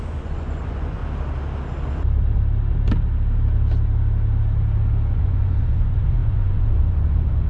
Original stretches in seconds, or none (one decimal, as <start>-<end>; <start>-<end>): 1.0-5.1